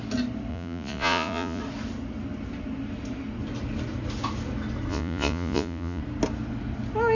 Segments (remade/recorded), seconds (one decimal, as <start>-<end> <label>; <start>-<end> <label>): 0.0-0.5 recorded; 0.5-1.6 remade; 1.6-4.9 recorded; 4.9-6.0 remade; 6.0-7.1 recorded